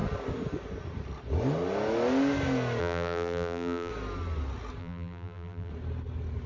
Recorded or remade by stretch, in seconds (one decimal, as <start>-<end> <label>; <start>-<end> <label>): 0.0-2.8 recorded; 2.8-3.9 remade; 3.9-4.8 recorded; 4.8-5.7 remade; 5.7-6.5 recorded